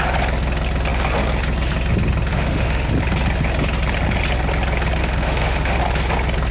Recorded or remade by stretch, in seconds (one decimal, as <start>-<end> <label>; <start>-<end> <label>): 0.0-2.3 recorded; 2.3-2.9 remade; 2.9-5.0 recorded; 5.0-5.8 remade; 5.8-6.5 recorded